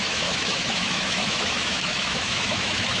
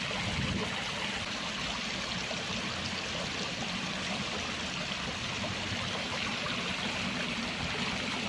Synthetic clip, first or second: first